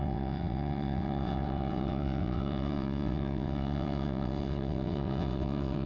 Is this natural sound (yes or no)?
no